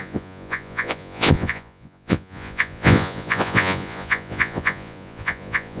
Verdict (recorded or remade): remade